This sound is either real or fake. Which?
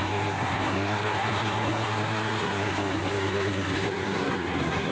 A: fake